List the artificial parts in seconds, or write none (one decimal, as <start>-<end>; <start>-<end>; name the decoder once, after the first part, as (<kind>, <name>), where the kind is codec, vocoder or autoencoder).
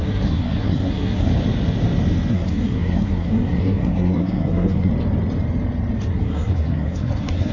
0.0-1.3 (codec, SNAC); 2.3-4.9; 6.1-7.5